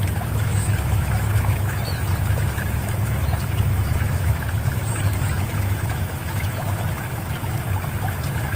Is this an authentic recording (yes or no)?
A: no